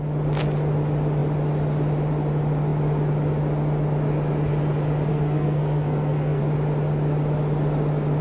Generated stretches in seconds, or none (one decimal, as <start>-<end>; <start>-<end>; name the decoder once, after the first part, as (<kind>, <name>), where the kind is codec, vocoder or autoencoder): 5.1-6.4 (codec, SNAC)